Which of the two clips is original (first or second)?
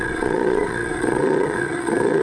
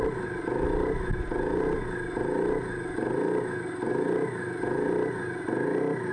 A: second